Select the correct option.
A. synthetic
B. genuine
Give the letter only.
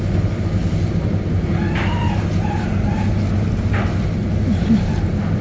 B